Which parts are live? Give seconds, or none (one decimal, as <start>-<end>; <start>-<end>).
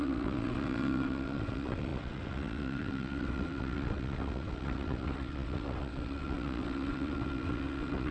none